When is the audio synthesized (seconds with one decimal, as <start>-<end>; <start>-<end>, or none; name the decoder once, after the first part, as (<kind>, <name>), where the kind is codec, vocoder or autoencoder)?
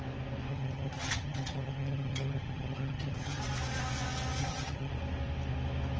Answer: 0.5-3.4 (vocoder, HiFi-GAN); 4.4-4.9